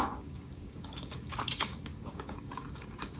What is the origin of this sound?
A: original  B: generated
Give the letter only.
B